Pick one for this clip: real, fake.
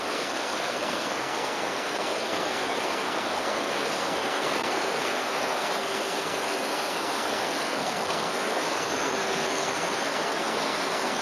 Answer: fake